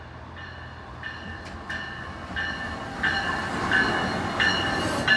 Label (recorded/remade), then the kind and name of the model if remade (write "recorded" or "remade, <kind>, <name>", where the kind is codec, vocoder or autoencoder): recorded